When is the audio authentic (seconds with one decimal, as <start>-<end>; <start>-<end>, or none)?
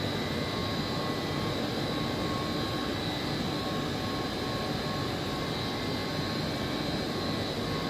0.0-7.9